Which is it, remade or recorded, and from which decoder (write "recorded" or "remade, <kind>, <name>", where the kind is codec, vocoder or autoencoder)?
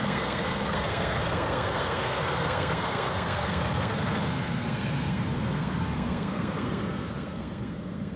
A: remade, codec, SNAC